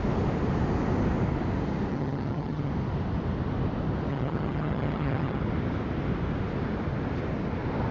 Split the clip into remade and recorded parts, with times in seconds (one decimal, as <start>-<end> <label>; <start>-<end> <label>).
0.0-1.9 recorded; 1.9-2.7 remade; 2.7-4.1 recorded; 4.1-5.4 remade; 5.4-7.9 recorded